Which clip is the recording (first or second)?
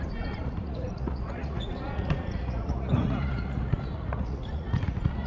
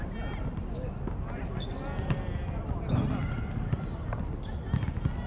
second